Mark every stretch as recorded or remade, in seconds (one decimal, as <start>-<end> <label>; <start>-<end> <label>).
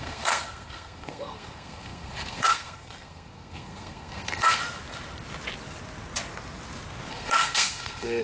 0.0-4.6 remade; 4.6-7.1 recorded; 7.1-8.2 remade